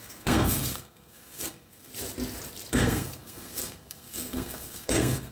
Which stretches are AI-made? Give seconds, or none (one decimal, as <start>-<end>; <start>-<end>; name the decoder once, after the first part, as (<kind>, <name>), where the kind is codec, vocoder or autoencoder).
0.0-1.9 (codec, SNAC); 2.7-5.3